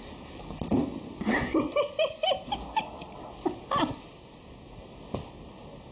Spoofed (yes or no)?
no